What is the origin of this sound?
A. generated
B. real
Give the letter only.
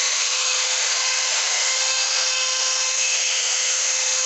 A